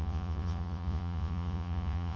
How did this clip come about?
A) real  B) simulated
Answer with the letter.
B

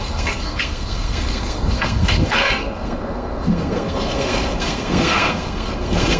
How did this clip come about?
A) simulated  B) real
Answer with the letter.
A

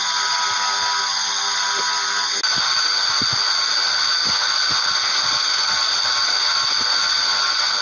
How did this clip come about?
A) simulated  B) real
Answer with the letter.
B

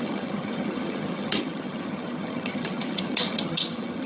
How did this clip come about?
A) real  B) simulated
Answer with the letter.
B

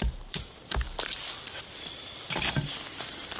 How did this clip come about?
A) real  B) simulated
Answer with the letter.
B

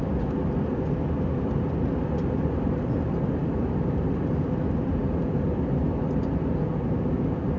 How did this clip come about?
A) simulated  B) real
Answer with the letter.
B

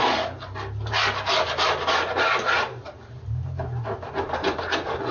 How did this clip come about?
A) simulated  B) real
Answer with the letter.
B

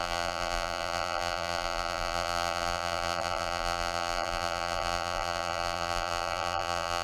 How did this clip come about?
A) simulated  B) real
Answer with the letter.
A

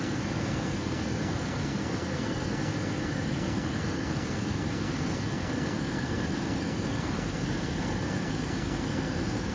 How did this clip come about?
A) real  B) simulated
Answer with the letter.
B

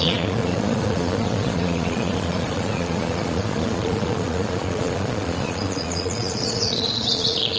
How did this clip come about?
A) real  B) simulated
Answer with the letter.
B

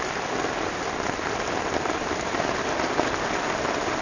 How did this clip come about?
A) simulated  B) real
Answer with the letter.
B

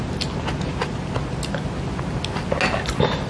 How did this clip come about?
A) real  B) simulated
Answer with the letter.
A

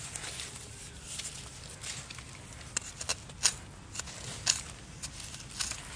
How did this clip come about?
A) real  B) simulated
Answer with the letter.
A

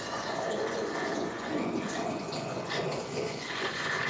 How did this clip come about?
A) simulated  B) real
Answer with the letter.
A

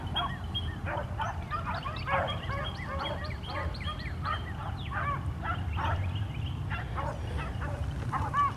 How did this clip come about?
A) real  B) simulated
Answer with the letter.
A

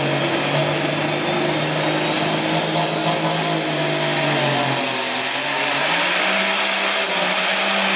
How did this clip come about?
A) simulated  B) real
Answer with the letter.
B